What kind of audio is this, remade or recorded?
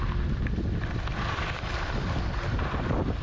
recorded